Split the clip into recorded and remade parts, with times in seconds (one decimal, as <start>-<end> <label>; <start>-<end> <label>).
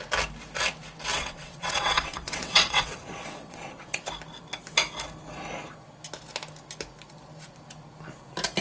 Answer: 0.0-1.1 recorded; 1.1-4.0 remade; 4.0-8.6 recorded